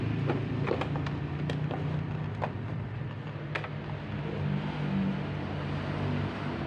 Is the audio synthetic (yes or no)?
no